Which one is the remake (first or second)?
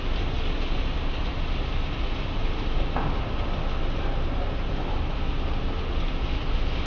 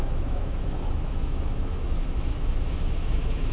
second